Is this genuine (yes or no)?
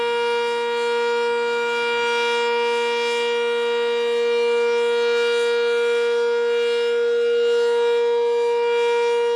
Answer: yes